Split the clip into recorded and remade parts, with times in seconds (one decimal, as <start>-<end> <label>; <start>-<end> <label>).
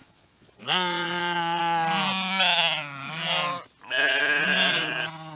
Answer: 0.0-1.6 remade; 1.6-5.4 recorded